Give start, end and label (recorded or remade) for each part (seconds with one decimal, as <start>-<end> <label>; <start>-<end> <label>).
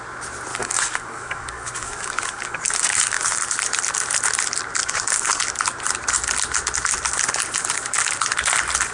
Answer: 0.0-0.5 recorded; 0.5-3.4 remade; 3.4-4.8 recorded; 4.8-5.4 remade; 5.4-8.9 recorded